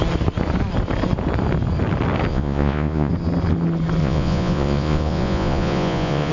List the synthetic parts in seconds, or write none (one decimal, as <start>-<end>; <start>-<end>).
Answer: 2.3-3.1; 4.0-6.3